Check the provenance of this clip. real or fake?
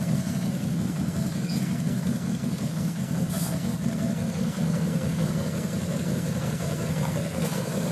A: fake